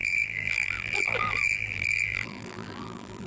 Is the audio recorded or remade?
remade